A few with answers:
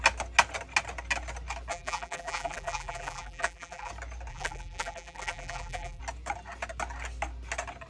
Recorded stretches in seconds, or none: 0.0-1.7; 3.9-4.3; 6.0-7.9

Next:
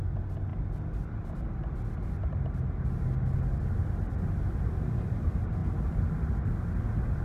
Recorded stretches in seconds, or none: 0.0-5.6; 6.1-7.2

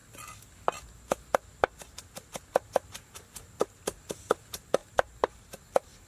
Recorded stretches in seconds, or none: 0.0-4.8; 5.5-6.1

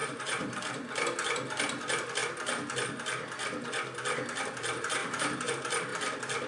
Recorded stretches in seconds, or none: 0.7-5.0; 5.5-6.5

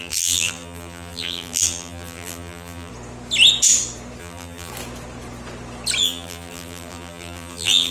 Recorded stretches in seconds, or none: 2.9-4.2; 4.7-6.0